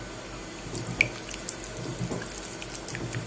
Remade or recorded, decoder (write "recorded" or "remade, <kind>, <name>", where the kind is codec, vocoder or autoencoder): recorded